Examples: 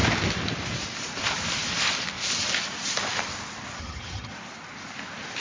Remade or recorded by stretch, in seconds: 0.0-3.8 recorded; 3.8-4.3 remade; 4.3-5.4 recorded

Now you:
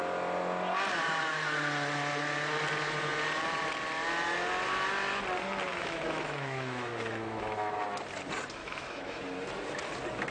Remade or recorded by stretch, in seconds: 0.0-5.7 recorded; 5.7-7.8 remade; 7.8-8.6 recorded; 8.6-9.2 remade; 9.2-10.3 recorded

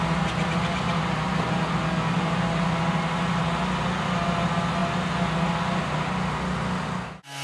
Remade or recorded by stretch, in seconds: 0.0-7.4 recorded

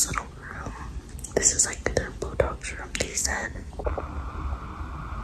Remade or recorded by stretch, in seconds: 0.0-3.1 recorded; 3.1-3.7 remade; 3.7-5.2 recorded

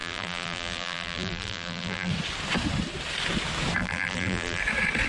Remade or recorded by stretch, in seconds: 0.0-2.1 remade; 2.1-3.8 recorded; 3.8-4.6 remade; 4.6-5.1 recorded

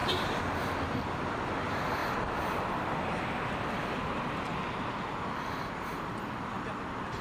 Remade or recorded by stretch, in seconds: 0.0-7.2 recorded